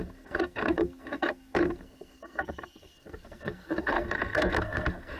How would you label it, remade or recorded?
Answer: remade